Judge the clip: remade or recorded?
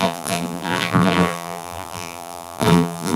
remade